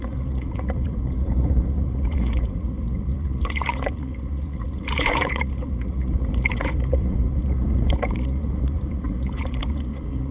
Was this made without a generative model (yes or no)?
no